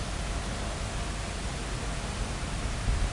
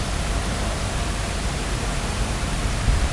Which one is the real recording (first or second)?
first